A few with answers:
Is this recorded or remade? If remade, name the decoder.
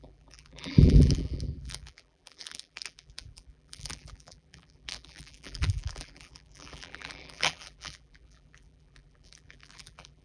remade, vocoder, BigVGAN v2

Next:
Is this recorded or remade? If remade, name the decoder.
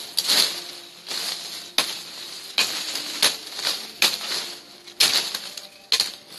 recorded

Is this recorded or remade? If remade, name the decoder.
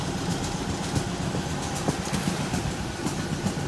recorded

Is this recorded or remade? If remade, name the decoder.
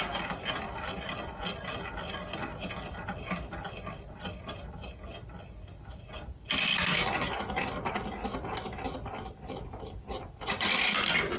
recorded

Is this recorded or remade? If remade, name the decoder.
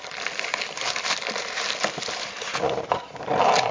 remade, vocoder, BigVGAN v2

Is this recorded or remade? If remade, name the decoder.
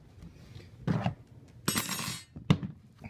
recorded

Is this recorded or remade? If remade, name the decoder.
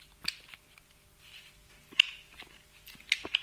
recorded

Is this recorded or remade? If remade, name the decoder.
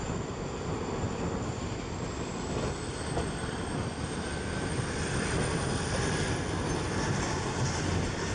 recorded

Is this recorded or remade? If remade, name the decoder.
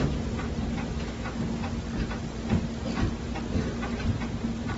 recorded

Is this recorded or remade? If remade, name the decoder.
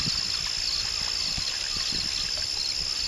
recorded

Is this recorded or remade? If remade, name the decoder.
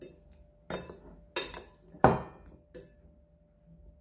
recorded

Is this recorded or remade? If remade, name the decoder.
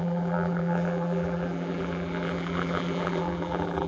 remade, vocoder, BigVGAN v2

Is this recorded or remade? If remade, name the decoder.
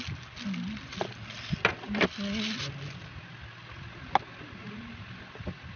recorded